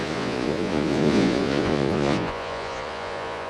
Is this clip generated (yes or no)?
yes